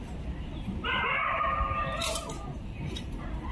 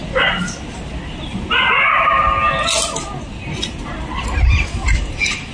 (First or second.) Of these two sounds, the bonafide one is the second